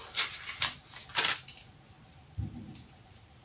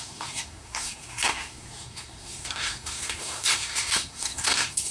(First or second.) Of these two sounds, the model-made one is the second